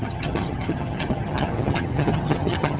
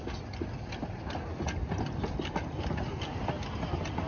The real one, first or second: second